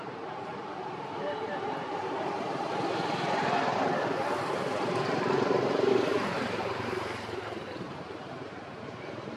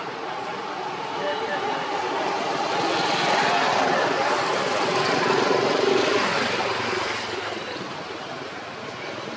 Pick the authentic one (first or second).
second